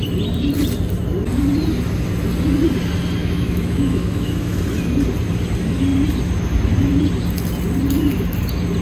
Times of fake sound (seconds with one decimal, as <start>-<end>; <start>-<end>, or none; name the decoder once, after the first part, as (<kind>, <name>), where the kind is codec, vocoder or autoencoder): 3.2-4.6 (autoencoder, DAC-VAE)